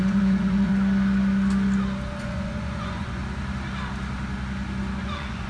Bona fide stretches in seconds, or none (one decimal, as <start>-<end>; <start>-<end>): 0.7-2.2; 3.2-5.0